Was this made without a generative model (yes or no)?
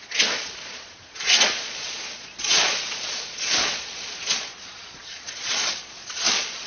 no